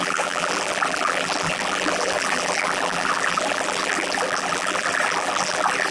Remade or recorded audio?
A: remade